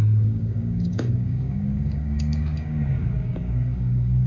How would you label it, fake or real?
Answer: fake